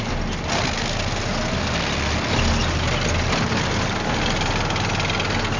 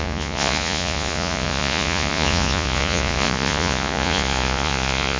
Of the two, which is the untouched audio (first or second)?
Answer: first